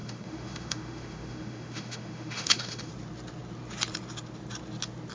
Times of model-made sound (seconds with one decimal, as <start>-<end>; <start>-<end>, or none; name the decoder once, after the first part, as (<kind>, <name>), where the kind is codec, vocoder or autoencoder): 0.0-2.9 (autoencoder, DAC-VAE)